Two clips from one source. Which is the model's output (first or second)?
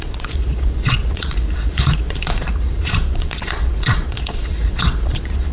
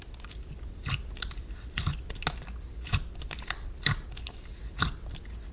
first